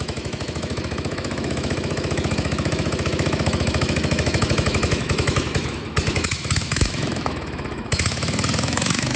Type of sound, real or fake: fake